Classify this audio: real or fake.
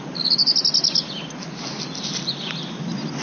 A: real